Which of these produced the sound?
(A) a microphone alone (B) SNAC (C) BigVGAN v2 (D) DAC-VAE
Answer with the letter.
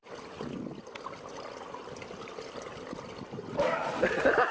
A